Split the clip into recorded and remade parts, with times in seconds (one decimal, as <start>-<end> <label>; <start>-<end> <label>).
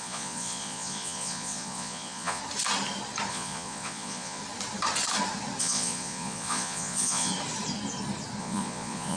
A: 0.0-2.4 remade; 2.4-3.3 recorded; 3.3-4.4 remade; 4.4-5.6 recorded; 5.6-7.3 remade; 7.3-8.4 recorded; 8.4-9.2 remade